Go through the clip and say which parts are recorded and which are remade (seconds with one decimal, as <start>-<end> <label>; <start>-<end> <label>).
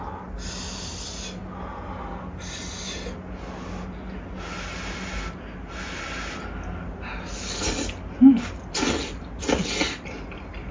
0.0-10.7 recorded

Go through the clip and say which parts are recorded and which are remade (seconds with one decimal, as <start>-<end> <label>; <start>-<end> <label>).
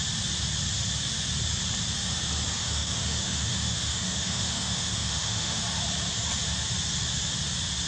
0.0-2.6 recorded; 2.6-5.6 remade; 5.6-7.9 recorded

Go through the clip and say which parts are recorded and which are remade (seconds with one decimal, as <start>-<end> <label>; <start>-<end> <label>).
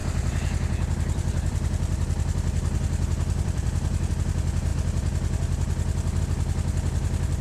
0.0-4.1 remade; 4.1-7.4 recorded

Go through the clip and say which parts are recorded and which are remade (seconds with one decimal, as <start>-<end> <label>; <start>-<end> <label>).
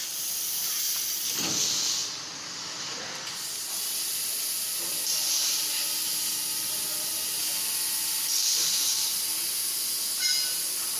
0.0-11.0 recorded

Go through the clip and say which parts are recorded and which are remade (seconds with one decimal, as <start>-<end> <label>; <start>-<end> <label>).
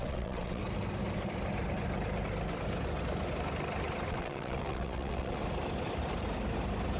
0.0-0.6 remade; 0.6-4.1 recorded; 4.1-5.4 remade; 5.4-7.0 recorded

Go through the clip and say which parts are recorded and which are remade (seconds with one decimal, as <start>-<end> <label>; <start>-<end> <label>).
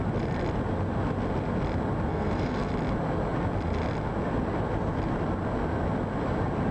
0.0-2.1 recorded; 2.1-2.7 remade; 2.7-6.7 recorded